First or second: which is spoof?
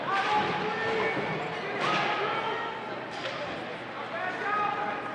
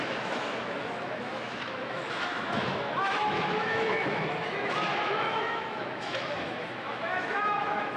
second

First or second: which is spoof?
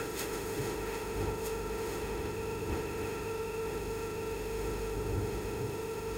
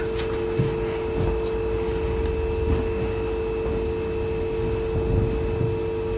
first